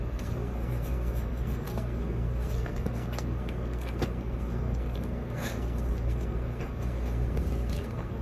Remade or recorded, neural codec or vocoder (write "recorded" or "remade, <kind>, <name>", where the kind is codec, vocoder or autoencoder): remade, codec, SNAC